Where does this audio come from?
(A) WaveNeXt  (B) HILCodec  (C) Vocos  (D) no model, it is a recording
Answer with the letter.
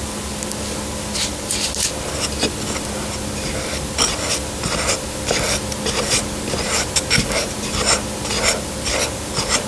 D